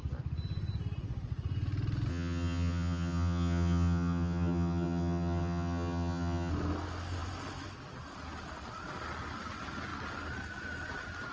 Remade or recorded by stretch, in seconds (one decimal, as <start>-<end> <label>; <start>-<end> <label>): 0.0-2.1 recorded; 2.1-6.5 remade; 6.5-11.3 recorded